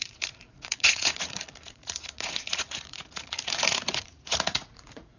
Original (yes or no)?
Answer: no